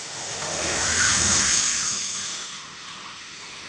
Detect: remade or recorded remade